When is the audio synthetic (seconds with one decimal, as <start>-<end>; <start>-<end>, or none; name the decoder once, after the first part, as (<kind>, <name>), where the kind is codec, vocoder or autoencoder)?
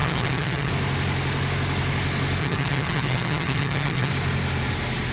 0.0-0.7 (vocoder, HiFi-GAN); 2.4-4.1